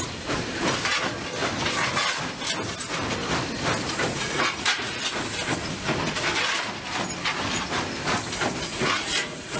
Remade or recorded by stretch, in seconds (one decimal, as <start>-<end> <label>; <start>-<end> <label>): 0.0-4.1 recorded; 4.1-4.9 remade; 4.9-8.7 recorded; 8.7-9.6 remade